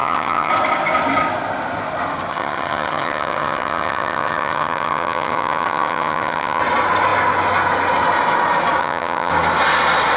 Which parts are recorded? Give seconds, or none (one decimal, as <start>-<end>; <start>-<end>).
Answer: 0.5-2.3; 6.6-8.8; 9.3-10.2